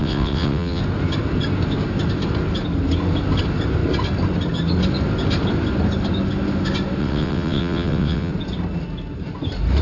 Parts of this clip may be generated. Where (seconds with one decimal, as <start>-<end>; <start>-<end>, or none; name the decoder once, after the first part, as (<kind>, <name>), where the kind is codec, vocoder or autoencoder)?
0.0-0.8 (vocoder, WaveNeXt); 7.0-8.3